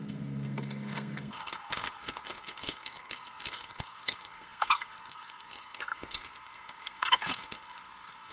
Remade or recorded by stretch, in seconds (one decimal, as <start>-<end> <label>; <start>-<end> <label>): 0.0-8.3 remade